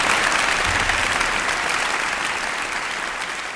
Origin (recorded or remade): recorded